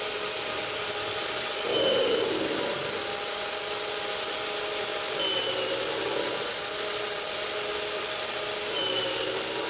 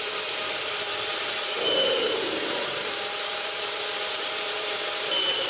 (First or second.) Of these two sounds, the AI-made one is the second